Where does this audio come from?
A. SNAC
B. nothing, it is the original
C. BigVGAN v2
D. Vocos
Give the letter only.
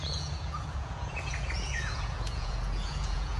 D